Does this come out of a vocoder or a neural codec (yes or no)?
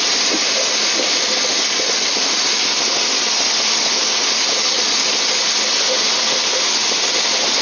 no